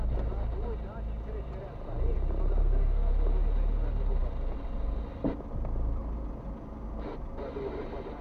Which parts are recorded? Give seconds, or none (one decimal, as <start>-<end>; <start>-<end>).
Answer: 0.0-2.6; 3.1-8.2